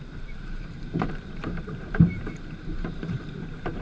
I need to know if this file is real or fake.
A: fake